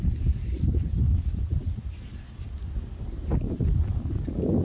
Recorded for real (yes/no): yes